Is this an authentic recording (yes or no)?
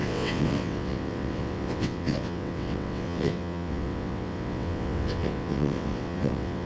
no